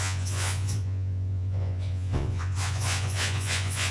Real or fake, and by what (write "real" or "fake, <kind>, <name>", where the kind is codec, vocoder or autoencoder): fake, vocoder, Vocos